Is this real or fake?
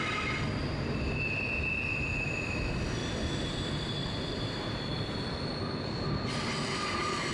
real